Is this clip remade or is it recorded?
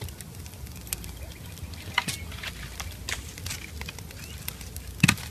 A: recorded